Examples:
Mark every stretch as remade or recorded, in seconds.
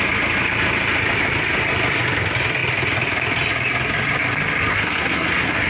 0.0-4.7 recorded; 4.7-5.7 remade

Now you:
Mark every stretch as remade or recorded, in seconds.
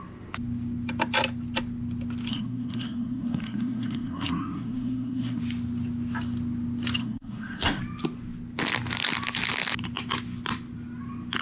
0.0-2.3 recorded; 2.3-5.4 remade; 5.4-7.0 recorded; 7.0-7.8 remade; 7.8-11.4 recorded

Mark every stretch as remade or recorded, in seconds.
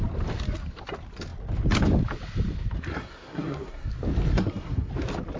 0.0-2.9 recorded; 2.9-3.9 remade; 3.9-4.3 recorded; 4.3-4.9 remade; 4.9-5.4 recorded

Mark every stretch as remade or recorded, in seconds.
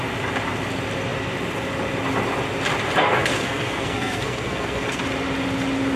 0.0-3.0 recorded; 3.0-5.0 remade; 5.0-6.0 recorded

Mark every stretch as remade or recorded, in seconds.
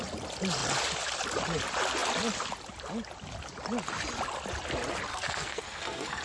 0.0-5.1 recorded; 5.1-6.2 remade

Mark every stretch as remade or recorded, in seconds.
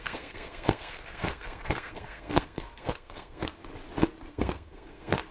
0.0-3.6 remade; 3.6-4.3 recorded; 4.3-5.3 remade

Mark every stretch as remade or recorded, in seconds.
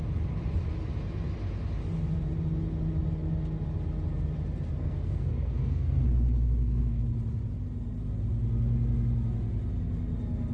0.0-4.8 recorded; 4.8-7.0 remade; 7.0-10.5 recorded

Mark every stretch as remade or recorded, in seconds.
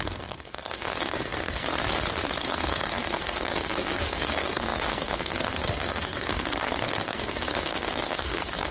0.0-1.7 remade; 1.7-2.3 recorded; 2.3-8.7 remade